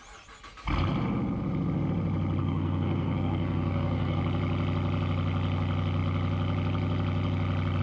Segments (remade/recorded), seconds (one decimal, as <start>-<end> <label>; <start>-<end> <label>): 0.0-2.4 recorded; 2.4-4.2 remade; 4.2-7.8 recorded